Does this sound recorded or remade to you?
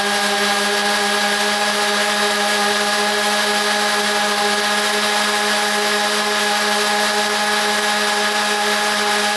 recorded